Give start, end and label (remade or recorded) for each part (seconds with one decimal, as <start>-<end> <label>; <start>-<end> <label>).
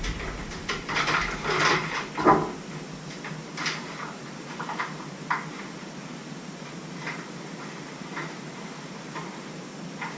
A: 0.0-10.2 recorded